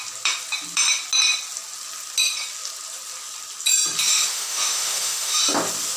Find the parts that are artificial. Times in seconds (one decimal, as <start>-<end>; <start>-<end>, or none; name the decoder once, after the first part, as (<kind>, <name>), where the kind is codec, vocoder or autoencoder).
4.3-5.4 (autoencoder, DAC-VAE)